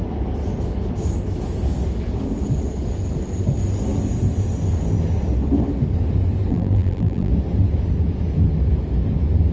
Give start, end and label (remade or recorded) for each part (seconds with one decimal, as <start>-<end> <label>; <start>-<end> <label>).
0.0-6.5 recorded; 6.5-7.3 remade; 7.3-9.5 recorded